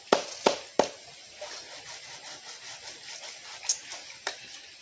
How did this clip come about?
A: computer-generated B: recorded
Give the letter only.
B